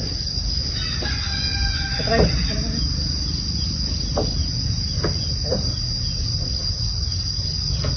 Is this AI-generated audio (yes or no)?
no